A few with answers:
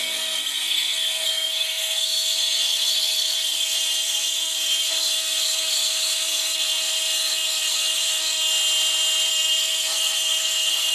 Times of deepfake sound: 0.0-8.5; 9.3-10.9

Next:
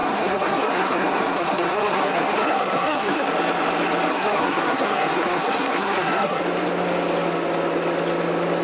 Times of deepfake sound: 0.0-3.3; 4.1-6.4